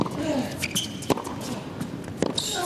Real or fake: real